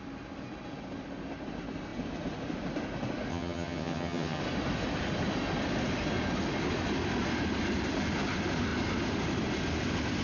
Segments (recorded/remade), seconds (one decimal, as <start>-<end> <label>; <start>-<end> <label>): 0.0-3.3 recorded; 3.3-4.4 remade; 4.4-10.2 recorded